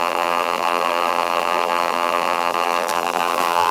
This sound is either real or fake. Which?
fake